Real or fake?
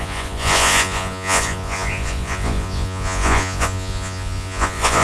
fake